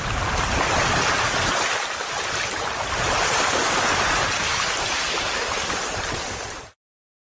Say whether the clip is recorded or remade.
recorded